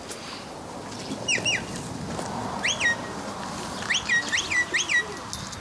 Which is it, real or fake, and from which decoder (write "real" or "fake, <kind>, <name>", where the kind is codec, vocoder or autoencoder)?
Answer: real